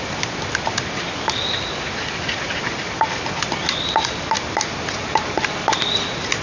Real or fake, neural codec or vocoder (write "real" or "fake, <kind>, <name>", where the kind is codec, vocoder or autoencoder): real